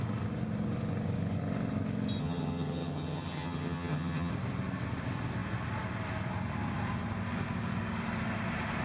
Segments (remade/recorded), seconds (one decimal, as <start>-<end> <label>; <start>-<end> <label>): 0.0-2.2 recorded; 2.2-4.3 remade; 4.3-8.8 recorded